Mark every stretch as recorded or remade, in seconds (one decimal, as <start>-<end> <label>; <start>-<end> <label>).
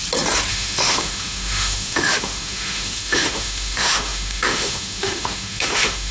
0.0-0.5 recorded; 0.5-6.1 remade